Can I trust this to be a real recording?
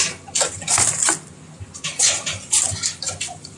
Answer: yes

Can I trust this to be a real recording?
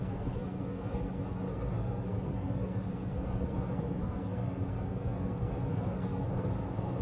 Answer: no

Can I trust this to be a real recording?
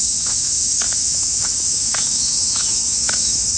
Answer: no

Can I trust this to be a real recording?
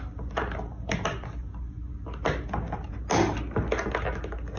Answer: yes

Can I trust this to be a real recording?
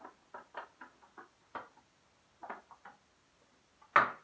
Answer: yes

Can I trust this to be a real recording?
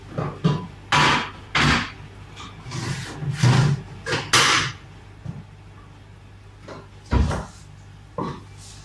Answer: yes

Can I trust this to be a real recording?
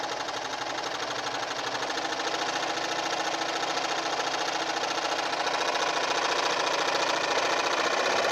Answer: yes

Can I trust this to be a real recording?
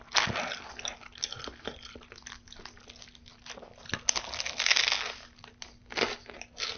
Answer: yes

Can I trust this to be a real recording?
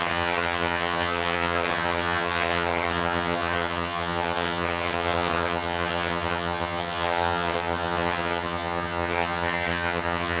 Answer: no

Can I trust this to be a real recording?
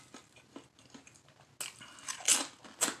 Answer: yes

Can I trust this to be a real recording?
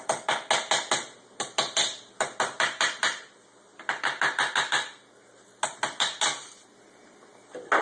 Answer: yes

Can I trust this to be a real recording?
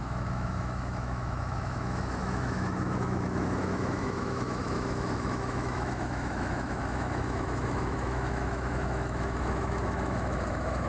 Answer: no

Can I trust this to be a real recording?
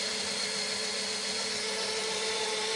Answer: yes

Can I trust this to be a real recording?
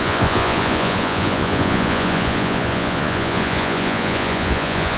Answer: no